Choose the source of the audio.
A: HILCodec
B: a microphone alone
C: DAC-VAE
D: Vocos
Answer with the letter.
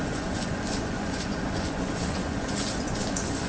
D